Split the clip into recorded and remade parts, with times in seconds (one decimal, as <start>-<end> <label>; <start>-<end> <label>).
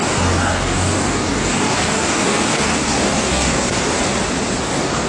0.0-4.0 remade; 4.0-4.6 recorded; 4.6-5.1 remade